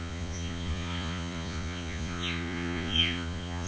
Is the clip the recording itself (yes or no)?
no